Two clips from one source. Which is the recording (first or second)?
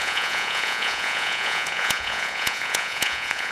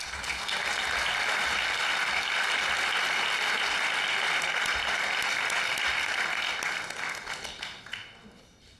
second